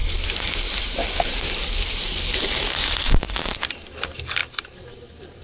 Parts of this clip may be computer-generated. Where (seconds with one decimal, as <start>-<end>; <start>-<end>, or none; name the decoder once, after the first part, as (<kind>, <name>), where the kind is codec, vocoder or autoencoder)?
none